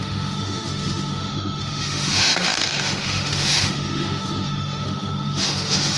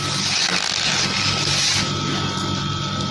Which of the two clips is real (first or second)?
second